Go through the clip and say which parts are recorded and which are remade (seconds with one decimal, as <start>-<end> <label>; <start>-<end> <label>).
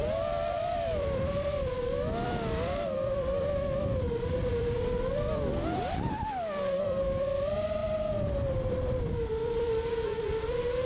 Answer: 0.0-7.8 remade; 7.8-8.5 recorded; 8.5-10.9 remade